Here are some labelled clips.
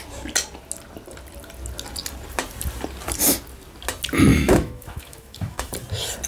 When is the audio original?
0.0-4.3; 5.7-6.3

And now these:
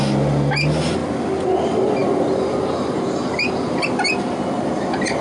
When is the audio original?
0.0-5.2

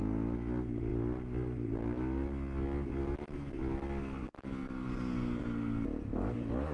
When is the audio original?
0.0-6.7

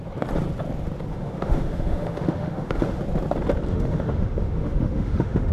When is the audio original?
0.0-1.1; 3.0-3.7

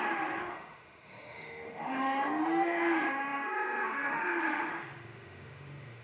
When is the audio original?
none

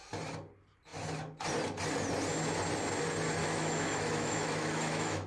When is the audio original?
0.0-3.4